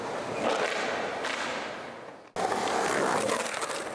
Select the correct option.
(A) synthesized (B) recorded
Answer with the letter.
B